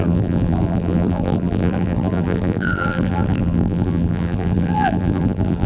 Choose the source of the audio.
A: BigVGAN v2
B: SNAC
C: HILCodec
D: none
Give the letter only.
A